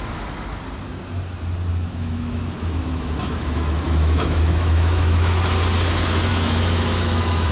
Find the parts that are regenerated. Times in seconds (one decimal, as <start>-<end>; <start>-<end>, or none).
1.7-5.4; 6.3-7.5